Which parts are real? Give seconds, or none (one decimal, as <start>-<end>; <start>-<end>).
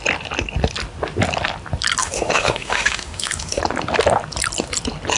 0.0-2.0; 3.6-5.2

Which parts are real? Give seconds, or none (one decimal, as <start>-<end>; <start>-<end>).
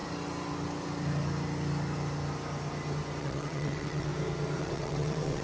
0.0-3.2; 4.1-4.6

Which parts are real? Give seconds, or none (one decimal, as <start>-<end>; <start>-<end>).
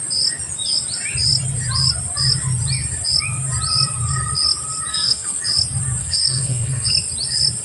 0.0-4.9; 5.4-6.0; 6.9-7.6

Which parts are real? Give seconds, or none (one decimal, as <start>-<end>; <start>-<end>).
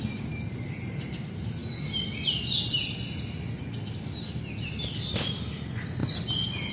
0.0-6.7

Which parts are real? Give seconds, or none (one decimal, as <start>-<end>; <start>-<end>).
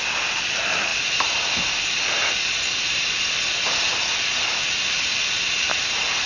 0.0-6.3